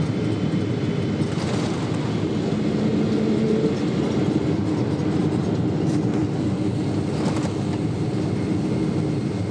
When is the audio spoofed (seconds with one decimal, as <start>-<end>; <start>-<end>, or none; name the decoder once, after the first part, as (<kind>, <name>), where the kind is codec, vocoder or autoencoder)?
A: none